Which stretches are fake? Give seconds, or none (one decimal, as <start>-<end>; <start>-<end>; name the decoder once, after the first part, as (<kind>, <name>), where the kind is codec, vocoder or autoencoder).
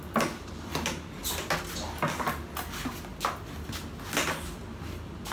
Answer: none